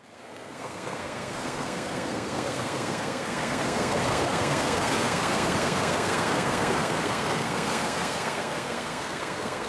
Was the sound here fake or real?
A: fake